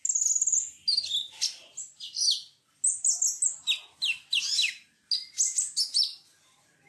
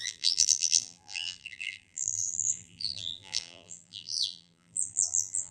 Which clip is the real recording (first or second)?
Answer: first